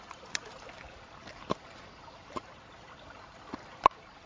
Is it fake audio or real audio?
real